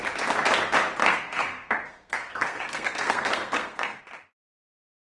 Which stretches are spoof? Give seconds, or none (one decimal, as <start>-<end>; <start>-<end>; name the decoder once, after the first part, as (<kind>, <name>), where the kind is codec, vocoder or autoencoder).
1.0-4.0 (codec, SNAC)